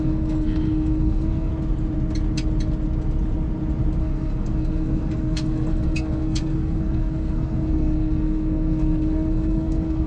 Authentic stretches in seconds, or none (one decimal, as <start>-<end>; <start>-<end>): 1.5-4.0